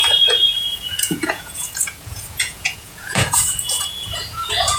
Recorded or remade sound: remade